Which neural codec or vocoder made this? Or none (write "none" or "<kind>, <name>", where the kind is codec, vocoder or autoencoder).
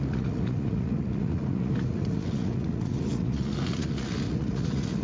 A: vocoder, Vocos